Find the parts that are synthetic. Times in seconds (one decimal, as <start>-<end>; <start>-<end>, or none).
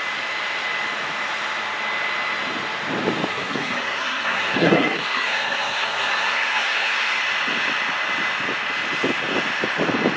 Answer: 3.3-7.2